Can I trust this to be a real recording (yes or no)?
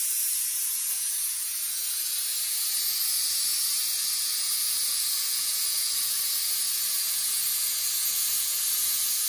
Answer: no